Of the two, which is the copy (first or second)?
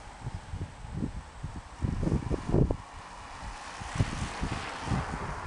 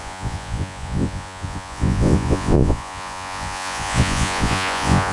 second